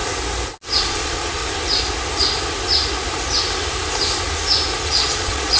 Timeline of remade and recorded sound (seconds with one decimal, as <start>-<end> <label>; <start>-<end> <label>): 0.0-0.8 recorded; 0.8-1.4 remade; 1.4-4.8 recorded; 4.8-5.6 remade